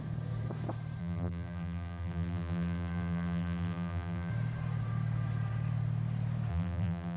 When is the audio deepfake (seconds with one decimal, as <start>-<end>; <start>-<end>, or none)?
1.0-4.3; 6.5-7.2